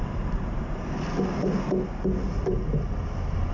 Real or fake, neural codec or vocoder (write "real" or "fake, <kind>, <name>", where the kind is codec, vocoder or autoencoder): real